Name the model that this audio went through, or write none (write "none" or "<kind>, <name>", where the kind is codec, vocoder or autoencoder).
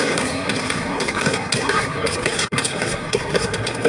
codec, SNAC